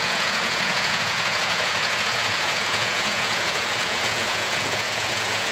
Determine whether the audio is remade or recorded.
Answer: remade